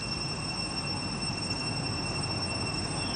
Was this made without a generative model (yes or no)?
yes